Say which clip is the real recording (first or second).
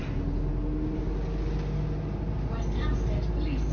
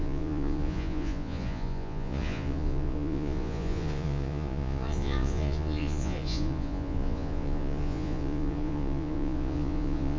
first